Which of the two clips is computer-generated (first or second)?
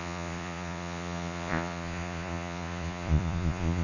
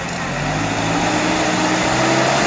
first